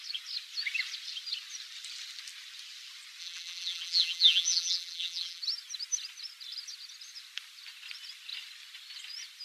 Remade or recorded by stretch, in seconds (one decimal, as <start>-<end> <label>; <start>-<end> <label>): 0.0-3.2 recorded; 3.2-5.4 remade; 5.4-9.4 recorded